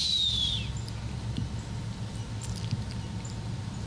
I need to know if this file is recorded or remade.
recorded